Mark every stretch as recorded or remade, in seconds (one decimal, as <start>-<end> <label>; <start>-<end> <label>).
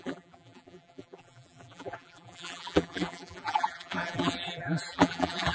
0.0-5.5 remade